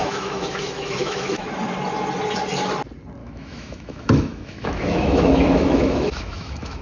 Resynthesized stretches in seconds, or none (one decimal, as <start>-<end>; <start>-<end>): 0.0-1.6; 3.2-6.8